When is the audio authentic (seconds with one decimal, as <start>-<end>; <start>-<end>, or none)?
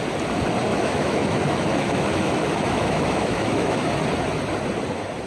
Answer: 0.0-0.7; 3.9-5.3